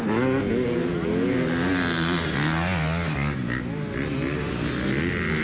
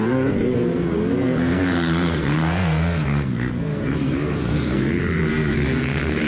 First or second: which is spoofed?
second